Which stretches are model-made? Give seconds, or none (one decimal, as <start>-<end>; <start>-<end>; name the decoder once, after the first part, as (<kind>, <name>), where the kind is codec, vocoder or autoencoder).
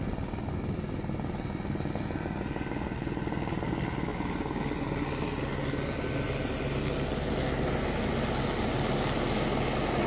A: none